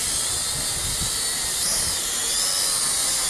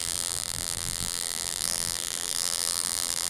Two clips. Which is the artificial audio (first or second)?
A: second